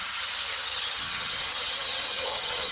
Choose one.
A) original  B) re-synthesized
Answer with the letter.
B